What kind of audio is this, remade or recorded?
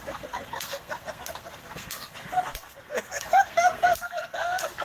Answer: remade